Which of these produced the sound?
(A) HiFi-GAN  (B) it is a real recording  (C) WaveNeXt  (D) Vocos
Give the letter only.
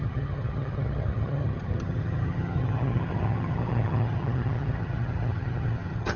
A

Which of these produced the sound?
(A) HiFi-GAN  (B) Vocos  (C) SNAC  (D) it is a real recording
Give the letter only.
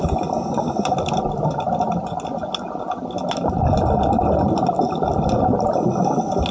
D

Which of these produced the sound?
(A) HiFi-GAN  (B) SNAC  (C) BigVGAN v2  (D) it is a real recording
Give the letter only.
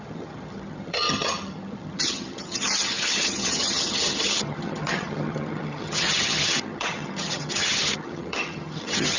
A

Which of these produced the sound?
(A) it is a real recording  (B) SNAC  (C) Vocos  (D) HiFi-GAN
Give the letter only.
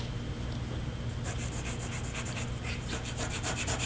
A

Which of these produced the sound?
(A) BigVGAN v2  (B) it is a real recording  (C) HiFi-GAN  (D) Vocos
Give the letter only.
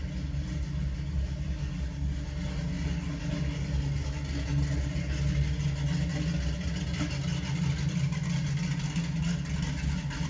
B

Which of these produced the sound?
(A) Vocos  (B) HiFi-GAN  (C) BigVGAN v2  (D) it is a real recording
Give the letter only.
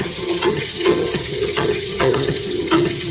B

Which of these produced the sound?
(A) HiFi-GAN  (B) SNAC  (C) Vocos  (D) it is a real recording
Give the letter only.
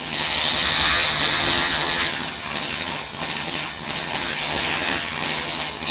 A